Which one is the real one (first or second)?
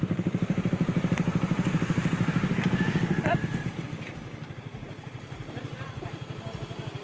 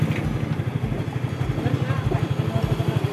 second